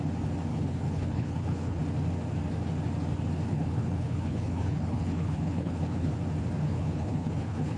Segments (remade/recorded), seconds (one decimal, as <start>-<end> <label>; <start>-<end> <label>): 0.0-0.5 recorded; 0.5-1.8 remade; 1.8-3.5 recorded; 3.5-6.1 remade; 6.1-6.6 recorded; 6.6-7.8 remade